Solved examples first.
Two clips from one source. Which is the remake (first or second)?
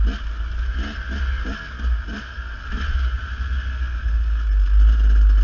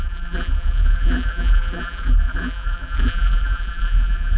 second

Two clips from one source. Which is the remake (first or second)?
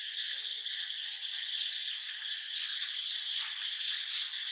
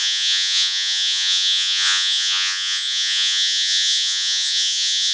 second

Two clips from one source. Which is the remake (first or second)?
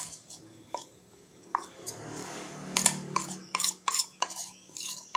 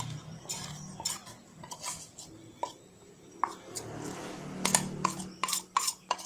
first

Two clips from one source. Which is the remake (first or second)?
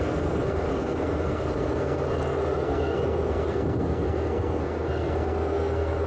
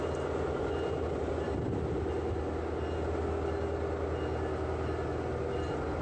first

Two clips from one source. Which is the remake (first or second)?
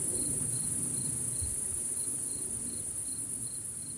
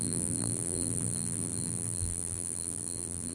second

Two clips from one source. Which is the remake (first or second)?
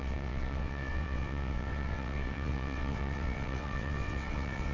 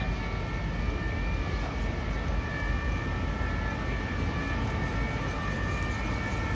first